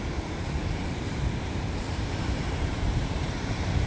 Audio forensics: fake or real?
fake